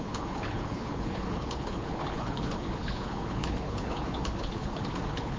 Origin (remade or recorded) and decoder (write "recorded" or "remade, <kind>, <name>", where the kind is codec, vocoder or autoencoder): remade, codec, HILCodec